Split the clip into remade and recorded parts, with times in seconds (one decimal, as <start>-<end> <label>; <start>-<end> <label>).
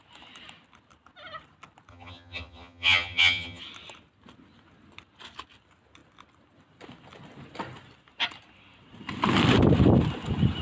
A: 0.0-1.9 recorded; 1.9-3.6 remade; 3.6-10.6 recorded